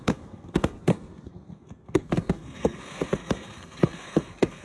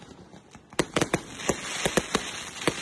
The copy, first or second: first